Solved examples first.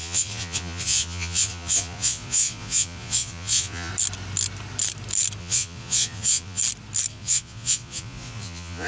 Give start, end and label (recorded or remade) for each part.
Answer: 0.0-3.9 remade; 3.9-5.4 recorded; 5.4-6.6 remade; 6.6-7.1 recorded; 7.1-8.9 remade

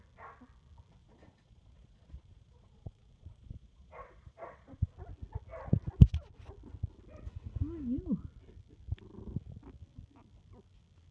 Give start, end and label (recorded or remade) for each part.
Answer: 0.0-1.0 recorded; 1.0-4.9 remade; 4.9-11.1 recorded

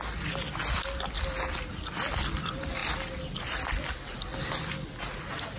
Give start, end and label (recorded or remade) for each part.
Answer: 0.0-5.6 recorded

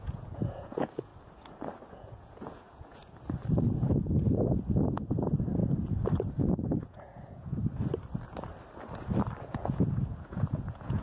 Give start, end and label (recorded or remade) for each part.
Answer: 0.0-1.1 remade; 1.1-1.9 recorded; 1.9-3.0 remade; 3.0-3.7 recorded; 3.7-5.6 remade; 5.6-6.8 recorded; 6.8-7.6 remade; 7.6-9.4 recorded; 9.4-11.0 remade

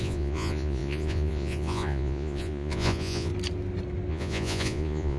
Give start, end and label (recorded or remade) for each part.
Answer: 0.0-3.3 remade; 3.3-4.1 recorded; 4.1-5.2 remade